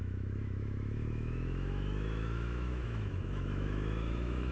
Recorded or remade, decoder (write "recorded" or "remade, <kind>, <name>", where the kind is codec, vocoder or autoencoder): remade, autoencoder, DAC-VAE